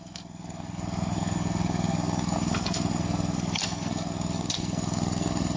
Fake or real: fake